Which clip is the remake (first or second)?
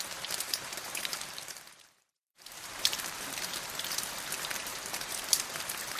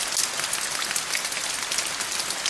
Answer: first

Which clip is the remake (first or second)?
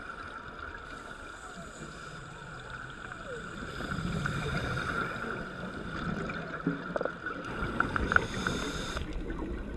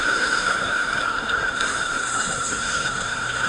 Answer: second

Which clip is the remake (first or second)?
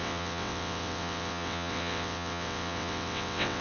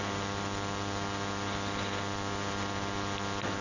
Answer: first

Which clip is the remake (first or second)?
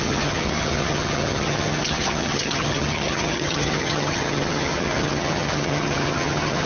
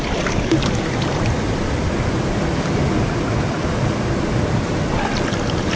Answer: first